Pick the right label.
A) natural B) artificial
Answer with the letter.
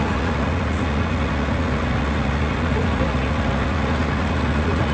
B